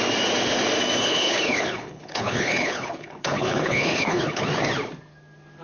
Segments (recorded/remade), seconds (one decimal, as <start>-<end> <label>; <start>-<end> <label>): 0.0-1.0 recorded; 1.0-4.4 remade; 4.4-5.6 recorded

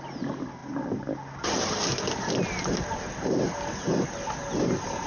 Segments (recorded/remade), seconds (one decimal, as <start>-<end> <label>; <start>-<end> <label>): 0.0-5.1 recorded

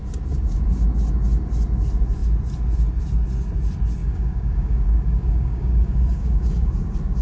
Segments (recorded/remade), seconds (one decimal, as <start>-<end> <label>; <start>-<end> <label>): 0.0-4.0 recorded; 4.0-6.7 remade; 6.7-7.2 recorded

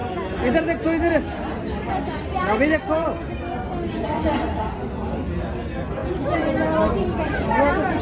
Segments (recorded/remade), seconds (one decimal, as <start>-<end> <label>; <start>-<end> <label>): 0.0-8.0 recorded

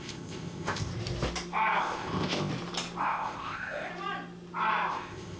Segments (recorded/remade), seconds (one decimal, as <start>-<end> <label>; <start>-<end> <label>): 0.0-0.9 remade; 0.9-1.8 recorded; 1.8-2.5 remade; 2.5-3.0 recorded; 3.0-3.9 remade; 3.9-4.9 recorded; 4.9-5.4 remade

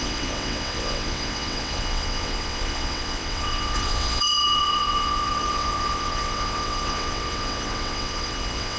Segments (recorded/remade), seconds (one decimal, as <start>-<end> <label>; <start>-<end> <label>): 0.0-8.8 remade

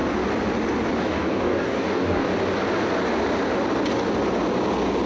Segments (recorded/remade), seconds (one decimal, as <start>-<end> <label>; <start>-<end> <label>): 0.0-1.0 recorded; 1.0-2.3 remade; 2.3-5.1 recorded

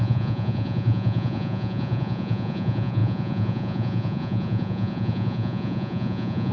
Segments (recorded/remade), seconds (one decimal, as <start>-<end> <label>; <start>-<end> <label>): 0.0-6.5 remade